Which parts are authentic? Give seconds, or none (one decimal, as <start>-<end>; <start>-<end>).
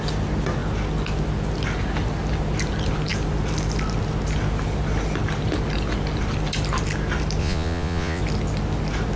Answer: 0.0-7.4; 8.2-9.2